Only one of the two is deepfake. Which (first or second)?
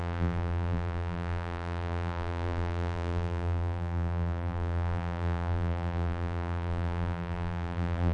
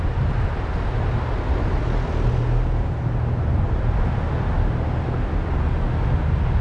first